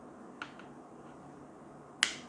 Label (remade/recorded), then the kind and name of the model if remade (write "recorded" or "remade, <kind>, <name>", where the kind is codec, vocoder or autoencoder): recorded